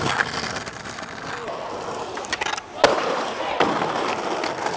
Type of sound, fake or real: real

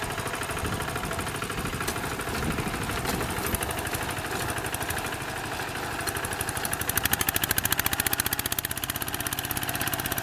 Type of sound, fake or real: real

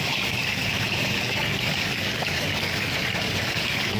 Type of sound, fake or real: fake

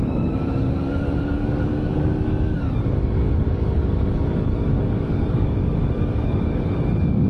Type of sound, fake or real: fake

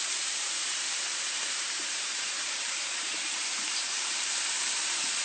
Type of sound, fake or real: fake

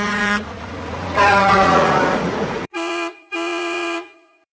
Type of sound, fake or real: fake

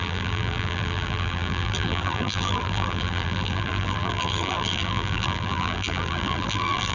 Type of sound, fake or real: fake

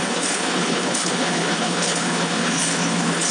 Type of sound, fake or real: fake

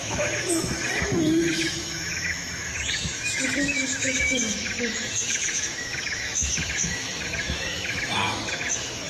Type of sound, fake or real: fake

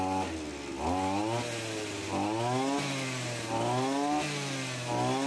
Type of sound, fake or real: real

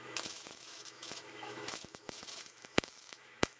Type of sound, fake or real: fake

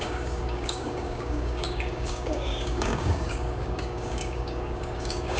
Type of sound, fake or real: fake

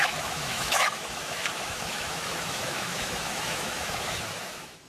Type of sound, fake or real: fake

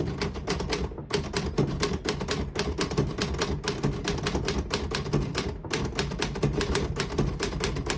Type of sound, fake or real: real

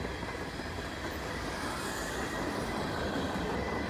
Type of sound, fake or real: fake